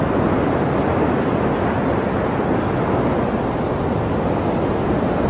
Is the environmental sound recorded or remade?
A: recorded